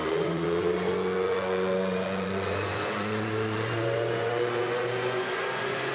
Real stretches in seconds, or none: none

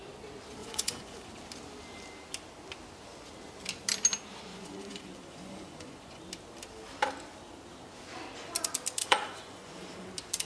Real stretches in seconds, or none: 0.0-0.6; 1.3-4.5; 6.2-9.0; 10.1-10.5

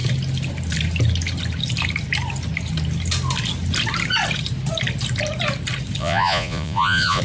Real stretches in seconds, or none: 0.0-6.0

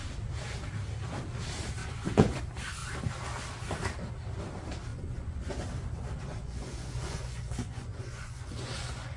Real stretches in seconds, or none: 0.0-1.8; 2.4-4.9; 5.5-6.3

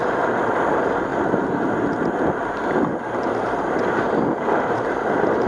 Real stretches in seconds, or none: 0.0-5.5

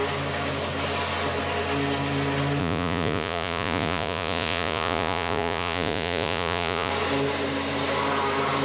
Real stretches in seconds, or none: 0.0-2.6; 6.9-8.6

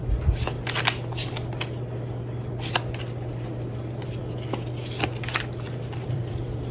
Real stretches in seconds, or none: 0.0-6.7